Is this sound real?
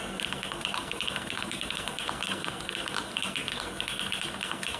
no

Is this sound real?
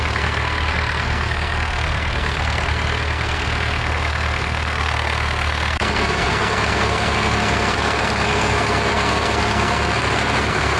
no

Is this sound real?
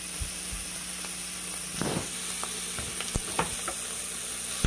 yes